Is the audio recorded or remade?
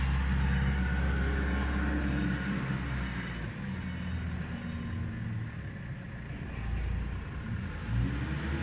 recorded